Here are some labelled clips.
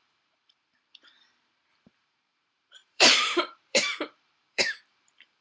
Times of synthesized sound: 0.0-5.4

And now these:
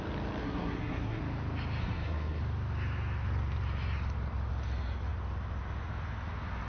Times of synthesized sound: 0.4-1.2; 1.8-2.4